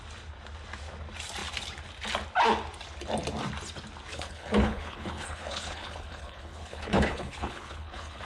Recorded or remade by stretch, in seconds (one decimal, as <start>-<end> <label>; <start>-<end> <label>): 0.0-4.1 recorded; 4.1-8.2 remade